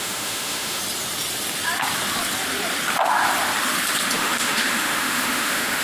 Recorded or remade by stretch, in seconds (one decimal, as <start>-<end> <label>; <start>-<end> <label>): 0.0-0.8 remade; 0.8-4.2 recorded; 4.2-5.8 remade